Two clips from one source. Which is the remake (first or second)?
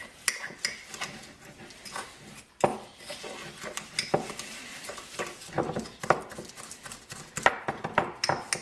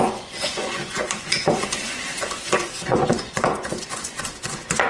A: second